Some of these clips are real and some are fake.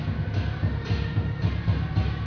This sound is real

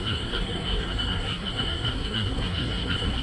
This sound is fake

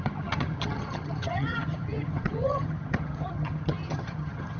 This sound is fake